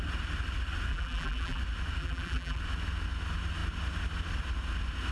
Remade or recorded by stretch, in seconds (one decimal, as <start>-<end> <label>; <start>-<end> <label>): 0.0-0.9 recorded; 0.9-1.6 remade; 1.6-2.0 recorded; 2.0-2.6 remade; 2.6-5.1 recorded